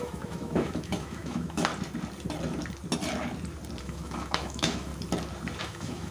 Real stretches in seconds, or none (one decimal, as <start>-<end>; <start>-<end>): 1.7-3.8; 4.9-5.6